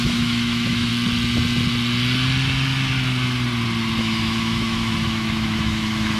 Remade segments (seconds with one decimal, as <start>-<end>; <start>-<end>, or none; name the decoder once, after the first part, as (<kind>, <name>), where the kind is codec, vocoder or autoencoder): 0.0-0.9 (autoencoder, DAC-VAE); 4.0-6.2

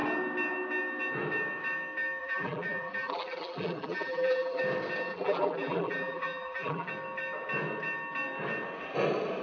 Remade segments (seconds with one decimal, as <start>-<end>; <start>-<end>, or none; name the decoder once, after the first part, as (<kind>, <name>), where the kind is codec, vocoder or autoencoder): 2.2-4.6 (vocoder, BigVGAN v2); 5.1-6.9

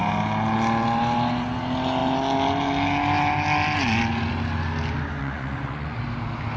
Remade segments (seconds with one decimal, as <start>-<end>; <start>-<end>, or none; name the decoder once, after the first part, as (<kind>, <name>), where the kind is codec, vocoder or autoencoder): 5.2-6.0 (vocoder, Vocos)

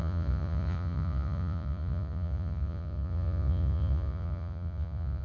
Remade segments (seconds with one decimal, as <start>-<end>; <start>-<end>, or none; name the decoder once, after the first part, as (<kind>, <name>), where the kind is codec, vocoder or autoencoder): 0.0-5.2 (vocoder, Vocos)

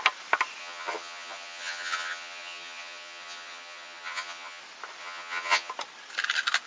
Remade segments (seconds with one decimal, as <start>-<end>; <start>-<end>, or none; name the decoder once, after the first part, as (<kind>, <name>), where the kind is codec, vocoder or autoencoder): 0.6-4.6 (vocoder, HiFi-GAN); 5.0-5.7

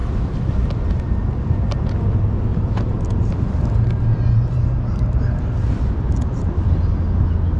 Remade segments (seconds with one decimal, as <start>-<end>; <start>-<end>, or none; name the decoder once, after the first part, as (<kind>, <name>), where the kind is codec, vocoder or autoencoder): 2.5-5.7 (vocoder, BigVGAN v2)

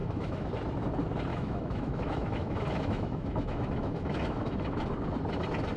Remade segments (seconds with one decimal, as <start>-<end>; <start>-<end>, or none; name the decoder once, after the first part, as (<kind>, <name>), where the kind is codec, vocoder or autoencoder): 0.0-0.5 (autoencoder, DAC-VAE); 1.3-4.6